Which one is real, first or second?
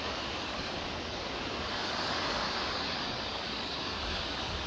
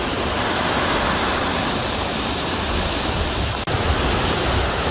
second